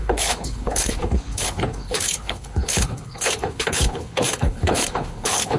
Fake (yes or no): yes